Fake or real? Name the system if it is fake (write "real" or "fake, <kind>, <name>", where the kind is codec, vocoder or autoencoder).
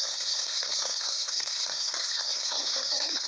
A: fake, codec, SNAC